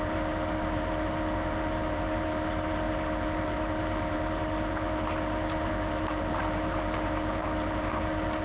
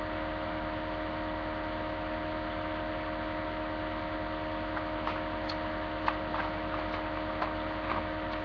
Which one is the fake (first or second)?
first